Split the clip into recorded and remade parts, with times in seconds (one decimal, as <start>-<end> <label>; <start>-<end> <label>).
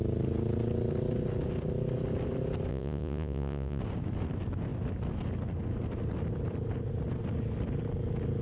0.0-2.7 recorded; 2.7-3.8 remade; 3.8-8.4 recorded